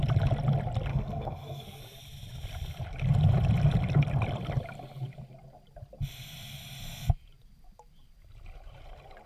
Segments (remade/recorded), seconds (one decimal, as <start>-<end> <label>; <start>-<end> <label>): 0.0-0.9 recorded; 0.9-1.8 remade; 1.8-9.3 recorded